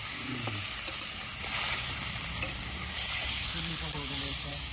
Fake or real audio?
real